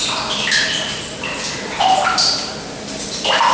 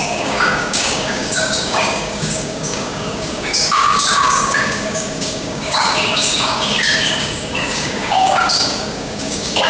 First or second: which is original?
first